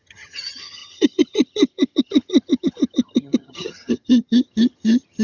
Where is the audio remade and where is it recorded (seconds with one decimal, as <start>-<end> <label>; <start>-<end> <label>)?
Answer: 0.0-5.2 remade